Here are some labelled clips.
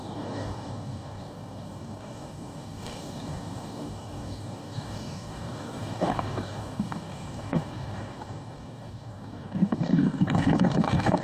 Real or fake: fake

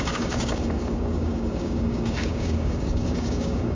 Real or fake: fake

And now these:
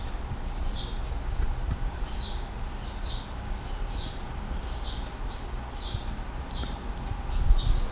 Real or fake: real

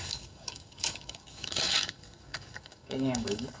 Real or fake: fake